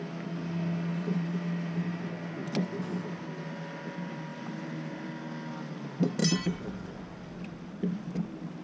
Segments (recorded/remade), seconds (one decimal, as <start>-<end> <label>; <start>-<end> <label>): 0.0-0.9 recorded; 0.9-2.0 remade; 2.0-4.3 recorded; 4.3-5.0 remade; 5.0-6.2 recorded; 6.2-6.9 remade; 6.9-8.6 recorded